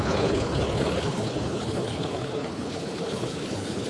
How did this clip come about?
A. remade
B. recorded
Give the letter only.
A